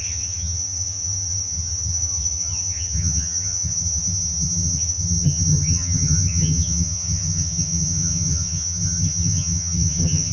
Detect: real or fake fake